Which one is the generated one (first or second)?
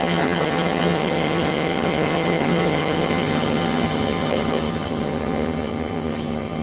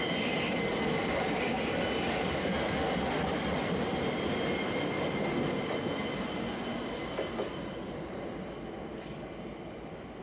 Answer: first